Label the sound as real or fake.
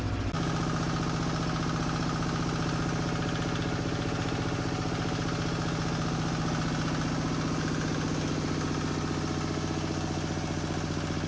real